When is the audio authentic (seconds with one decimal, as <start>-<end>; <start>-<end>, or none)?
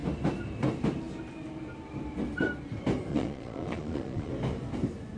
0.0-3.1; 4.3-5.2